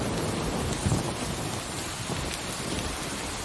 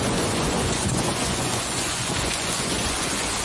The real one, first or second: first